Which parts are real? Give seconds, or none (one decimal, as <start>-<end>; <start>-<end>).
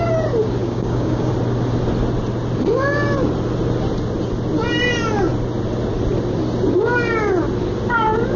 0.0-0.6; 1.3-8.4